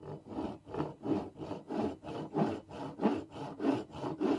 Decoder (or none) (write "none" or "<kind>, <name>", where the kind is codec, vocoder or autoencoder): none